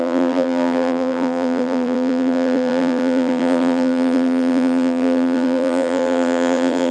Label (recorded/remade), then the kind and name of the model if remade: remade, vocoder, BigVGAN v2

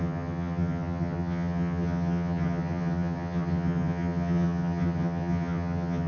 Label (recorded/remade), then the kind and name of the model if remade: remade, vocoder, HiFi-GAN